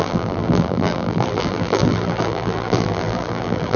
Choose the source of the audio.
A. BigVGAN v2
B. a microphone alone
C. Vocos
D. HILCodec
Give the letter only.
A